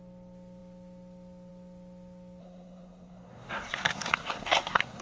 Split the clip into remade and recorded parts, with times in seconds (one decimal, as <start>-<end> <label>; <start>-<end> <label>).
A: 0.0-2.4 recorded; 2.4-5.0 remade